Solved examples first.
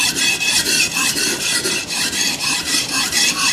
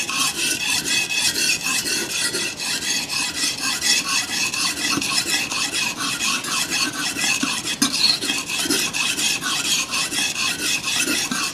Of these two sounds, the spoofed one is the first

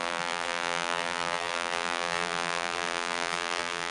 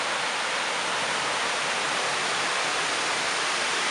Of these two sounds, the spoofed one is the first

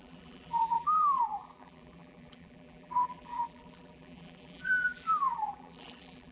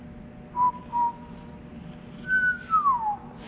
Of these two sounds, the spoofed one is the first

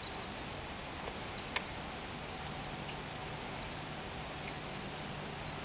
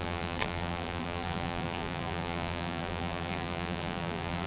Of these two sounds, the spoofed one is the second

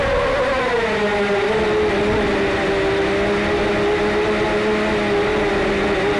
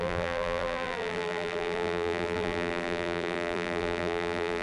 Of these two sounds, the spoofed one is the second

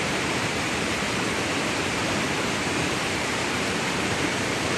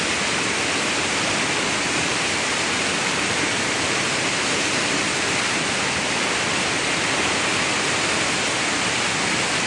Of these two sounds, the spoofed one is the first